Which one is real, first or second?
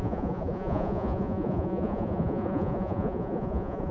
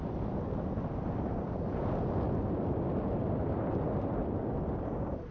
second